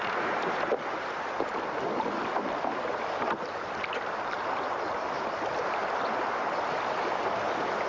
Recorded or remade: recorded